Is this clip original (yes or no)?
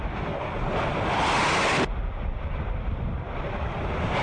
yes